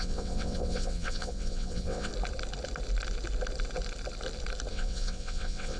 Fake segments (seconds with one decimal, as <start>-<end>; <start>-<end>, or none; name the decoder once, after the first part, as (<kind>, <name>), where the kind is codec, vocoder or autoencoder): 0.0-2.1 (vocoder, WaveNeXt); 4.7-5.8